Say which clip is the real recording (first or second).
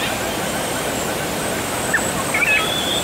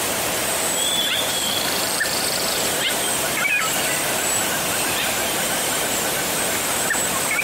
first